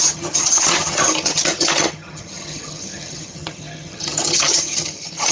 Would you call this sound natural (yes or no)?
no